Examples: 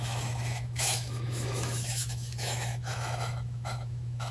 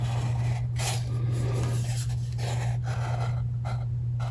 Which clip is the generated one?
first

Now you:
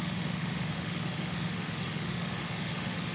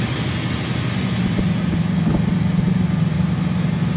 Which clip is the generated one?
first